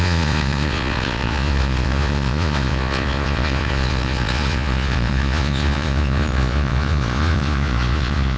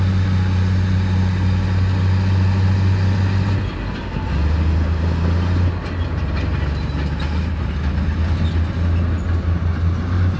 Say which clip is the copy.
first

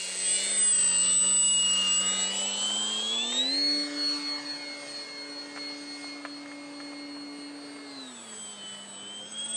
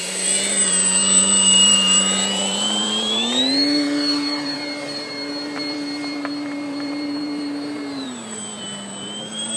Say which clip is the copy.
second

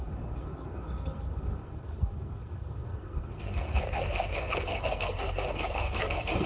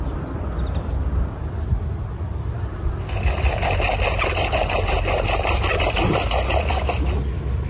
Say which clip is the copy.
first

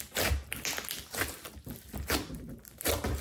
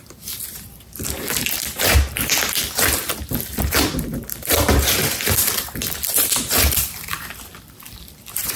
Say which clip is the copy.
second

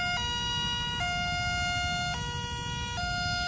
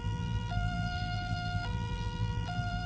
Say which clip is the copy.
second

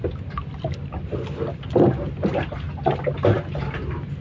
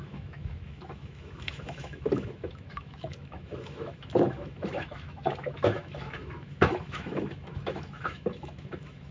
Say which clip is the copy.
second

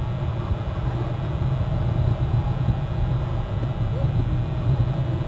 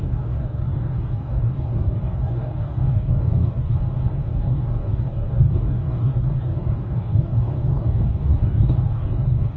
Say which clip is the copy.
second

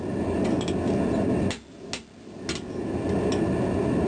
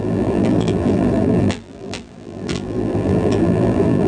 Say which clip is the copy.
second